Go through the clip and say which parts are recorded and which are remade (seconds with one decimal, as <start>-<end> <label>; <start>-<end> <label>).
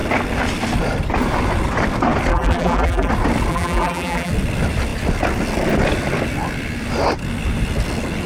0.0-2.3 recorded; 2.3-3.1 remade; 3.1-3.5 recorded; 3.5-4.3 remade; 4.3-8.3 recorded